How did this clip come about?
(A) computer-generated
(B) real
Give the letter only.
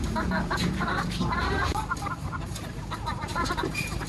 A